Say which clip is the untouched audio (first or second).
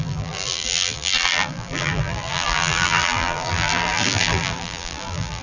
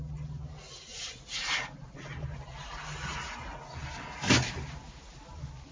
second